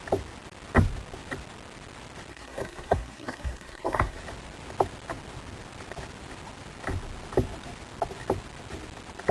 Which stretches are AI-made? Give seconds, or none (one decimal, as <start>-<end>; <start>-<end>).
2.3-4.2

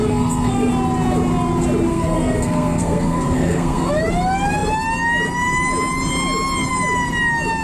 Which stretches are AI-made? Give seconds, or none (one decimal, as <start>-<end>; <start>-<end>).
0.0-0.7; 1.9-3.9